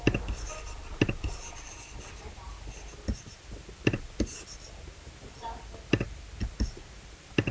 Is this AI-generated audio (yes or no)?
no